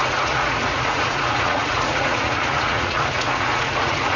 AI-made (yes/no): yes